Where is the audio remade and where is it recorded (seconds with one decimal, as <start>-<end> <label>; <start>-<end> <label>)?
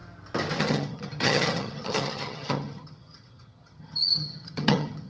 0.0-0.6 recorded; 0.6-5.1 remade